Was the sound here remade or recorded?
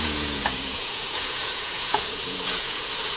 remade